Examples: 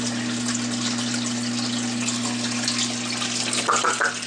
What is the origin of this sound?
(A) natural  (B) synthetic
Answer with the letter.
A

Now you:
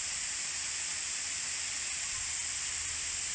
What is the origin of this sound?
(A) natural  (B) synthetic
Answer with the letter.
A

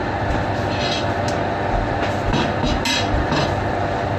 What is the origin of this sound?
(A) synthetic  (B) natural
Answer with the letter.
B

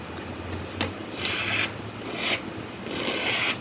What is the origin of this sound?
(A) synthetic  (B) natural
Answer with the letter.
B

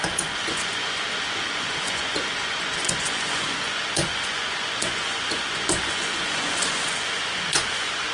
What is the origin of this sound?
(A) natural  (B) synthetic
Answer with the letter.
B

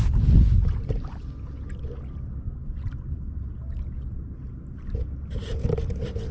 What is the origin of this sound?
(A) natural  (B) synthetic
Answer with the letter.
A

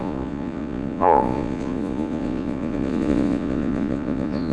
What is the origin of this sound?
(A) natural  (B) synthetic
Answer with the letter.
B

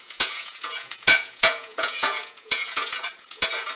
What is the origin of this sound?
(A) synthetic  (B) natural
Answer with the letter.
A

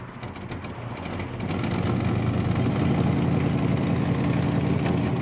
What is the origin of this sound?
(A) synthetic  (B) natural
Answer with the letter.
B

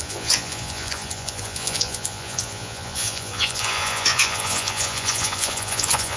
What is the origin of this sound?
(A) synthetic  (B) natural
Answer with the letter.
A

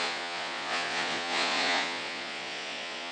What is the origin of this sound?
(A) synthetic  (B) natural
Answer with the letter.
A